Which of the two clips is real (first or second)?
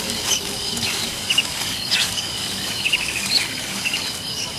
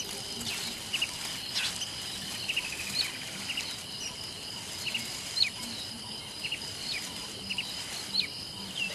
second